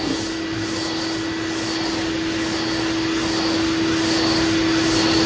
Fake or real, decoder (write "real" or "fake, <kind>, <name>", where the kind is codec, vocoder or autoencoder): real